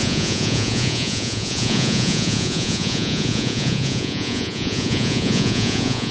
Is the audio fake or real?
fake